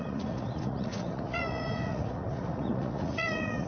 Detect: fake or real fake